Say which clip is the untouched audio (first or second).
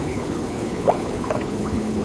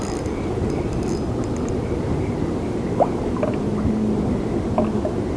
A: second